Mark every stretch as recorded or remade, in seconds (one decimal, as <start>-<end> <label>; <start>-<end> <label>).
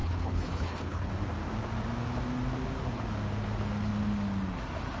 0.0-1.1 remade; 1.1-5.0 recorded